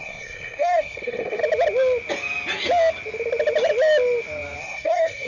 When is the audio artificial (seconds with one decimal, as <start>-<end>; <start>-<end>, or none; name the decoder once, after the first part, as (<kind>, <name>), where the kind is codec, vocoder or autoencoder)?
0.0-1.4 (codec, SNAC); 4.6-5.3